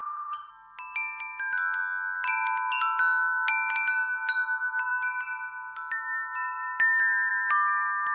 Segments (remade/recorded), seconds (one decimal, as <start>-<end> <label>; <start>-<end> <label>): 0.0-0.5 remade; 0.5-8.1 recorded